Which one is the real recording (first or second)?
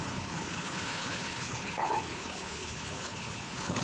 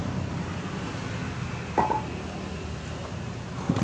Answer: second